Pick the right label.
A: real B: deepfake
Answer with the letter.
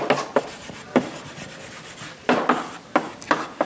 A